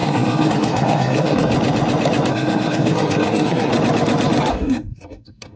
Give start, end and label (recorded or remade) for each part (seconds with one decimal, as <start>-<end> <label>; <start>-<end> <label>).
0.0-1.5 remade; 1.5-2.3 recorded; 2.3-3.7 remade; 3.7-4.5 recorded; 4.5-5.6 remade